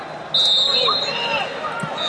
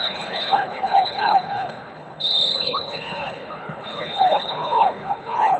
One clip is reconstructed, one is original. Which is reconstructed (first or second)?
second